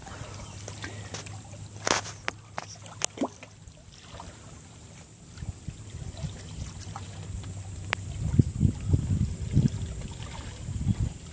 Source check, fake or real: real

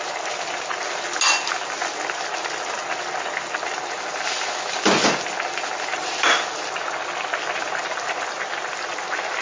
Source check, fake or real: real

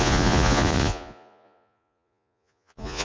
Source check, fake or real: fake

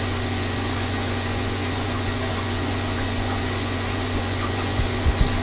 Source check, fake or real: fake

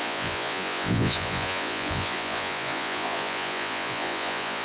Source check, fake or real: fake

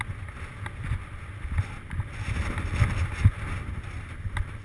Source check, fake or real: real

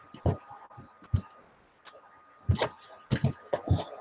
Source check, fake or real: real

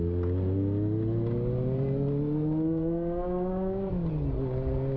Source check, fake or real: real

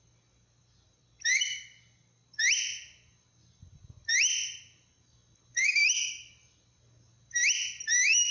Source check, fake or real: real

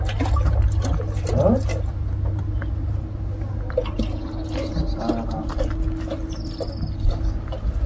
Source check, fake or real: real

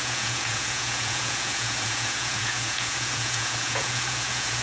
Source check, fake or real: fake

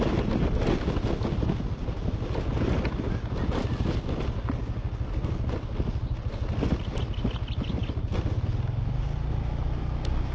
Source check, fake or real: real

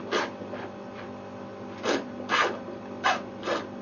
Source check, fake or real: real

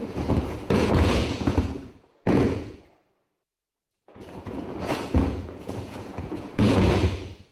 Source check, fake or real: fake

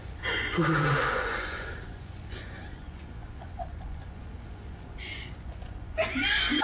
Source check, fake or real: fake